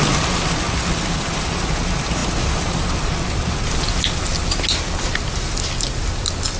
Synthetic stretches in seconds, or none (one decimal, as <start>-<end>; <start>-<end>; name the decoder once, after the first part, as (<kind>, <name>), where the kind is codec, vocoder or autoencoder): none